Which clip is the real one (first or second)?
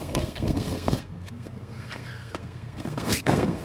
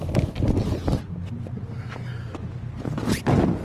second